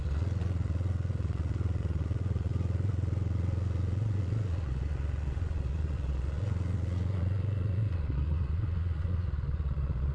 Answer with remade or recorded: remade